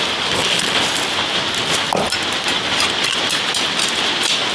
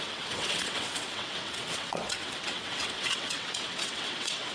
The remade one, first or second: second